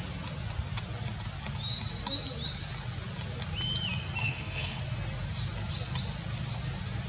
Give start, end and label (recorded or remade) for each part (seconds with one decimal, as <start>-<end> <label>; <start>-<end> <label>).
0.0-4.2 recorded; 4.2-4.8 remade; 4.8-7.1 recorded